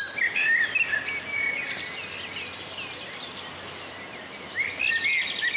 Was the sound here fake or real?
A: real